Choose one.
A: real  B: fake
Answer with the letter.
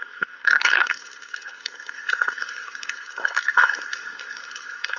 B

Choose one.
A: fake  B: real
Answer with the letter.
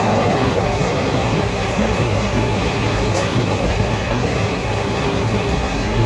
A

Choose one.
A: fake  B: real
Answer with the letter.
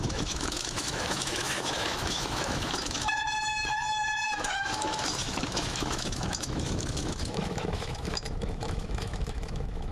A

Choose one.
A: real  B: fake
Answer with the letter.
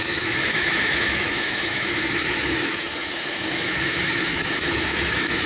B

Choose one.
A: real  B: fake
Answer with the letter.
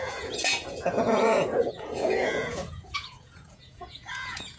B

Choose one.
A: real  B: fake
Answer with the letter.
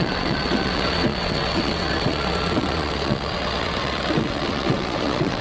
B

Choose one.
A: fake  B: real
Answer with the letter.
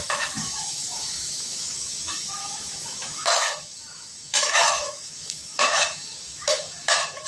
A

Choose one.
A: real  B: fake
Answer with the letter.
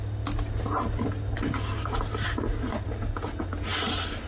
A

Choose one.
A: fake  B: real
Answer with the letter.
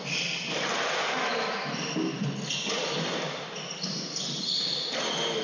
B